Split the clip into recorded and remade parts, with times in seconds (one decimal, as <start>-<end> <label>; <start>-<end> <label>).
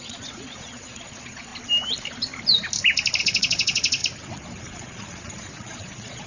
0.0-1.5 remade; 1.5-3.2 recorded; 3.2-4.0 remade; 4.0-4.6 recorded; 4.6-6.3 remade